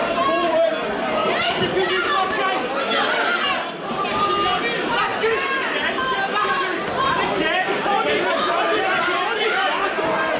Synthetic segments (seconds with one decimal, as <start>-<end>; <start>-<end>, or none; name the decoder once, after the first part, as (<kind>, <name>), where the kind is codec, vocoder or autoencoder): 0.0-0.7 (vocoder, BigVGAN v2); 1.2-1.9; 5.1-10.4